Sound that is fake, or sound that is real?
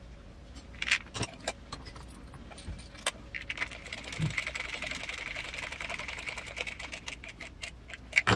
real